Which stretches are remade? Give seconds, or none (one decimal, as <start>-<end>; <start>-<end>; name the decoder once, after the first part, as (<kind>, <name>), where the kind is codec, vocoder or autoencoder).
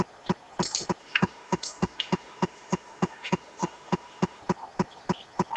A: 1.0-4.4 (autoencoder, DAC-VAE)